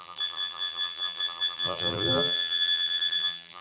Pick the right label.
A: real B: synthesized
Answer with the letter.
B